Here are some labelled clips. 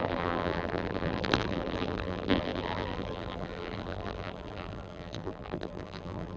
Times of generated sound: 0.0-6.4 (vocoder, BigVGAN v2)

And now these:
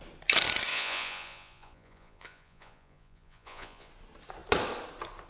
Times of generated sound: 0.7-3.9 (vocoder, Vocos)

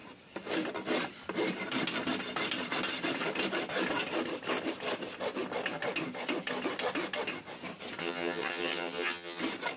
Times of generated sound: 8.0-9.4 (vocoder, HiFi-GAN)